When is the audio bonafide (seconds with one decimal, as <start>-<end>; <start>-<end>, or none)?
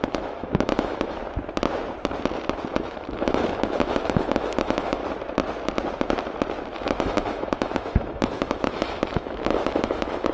1.2-2.8; 5.0-6.7